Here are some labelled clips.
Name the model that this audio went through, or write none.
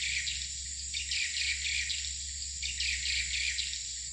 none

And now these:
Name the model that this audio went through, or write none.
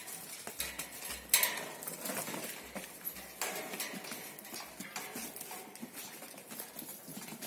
none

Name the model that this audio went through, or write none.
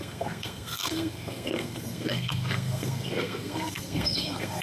codec, SNAC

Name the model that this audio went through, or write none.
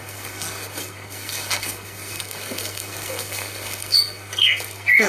codec, SNAC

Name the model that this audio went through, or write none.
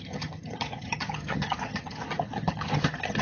vocoder, HiFi-GAN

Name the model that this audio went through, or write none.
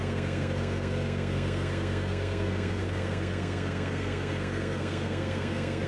codec, SNAC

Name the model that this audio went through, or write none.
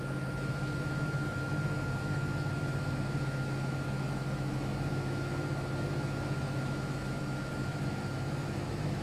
autoencoder, DAC-VAE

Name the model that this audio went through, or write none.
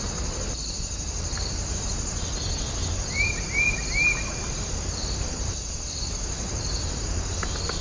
vocoder, BigVGAN v2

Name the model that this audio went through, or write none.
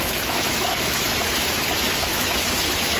autoencoder, DAC-VAE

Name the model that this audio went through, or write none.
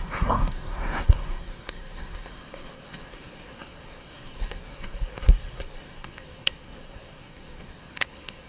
codec, SNAC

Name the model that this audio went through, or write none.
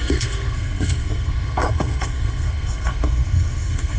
codec, SNAC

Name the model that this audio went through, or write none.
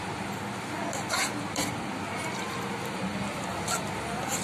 none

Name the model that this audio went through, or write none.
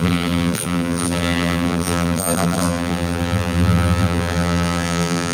vocoder, BigVGAN v2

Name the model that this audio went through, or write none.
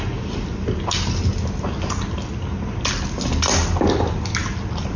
none